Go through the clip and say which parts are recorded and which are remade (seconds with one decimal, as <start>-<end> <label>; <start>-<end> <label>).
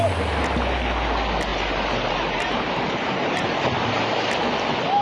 0.0-1.5 recorded; 1.5-4.2 remade; 4.2-5.0 recorded